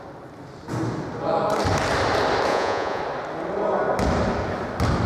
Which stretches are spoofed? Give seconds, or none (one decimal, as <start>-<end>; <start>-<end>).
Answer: 2.5-3.0